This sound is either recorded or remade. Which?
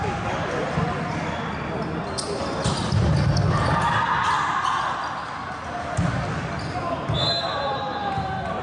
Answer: recorded